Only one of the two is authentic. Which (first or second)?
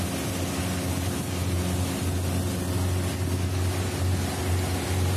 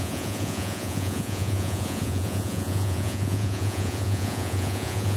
first